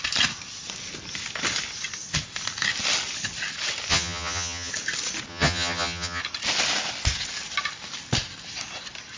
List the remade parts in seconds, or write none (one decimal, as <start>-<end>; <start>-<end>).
3.9-4.7; 5.3-6.2